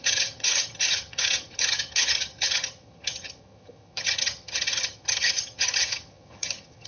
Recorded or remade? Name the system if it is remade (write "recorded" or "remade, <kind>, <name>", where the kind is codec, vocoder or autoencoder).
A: remade, vocoder, HiFi-GAN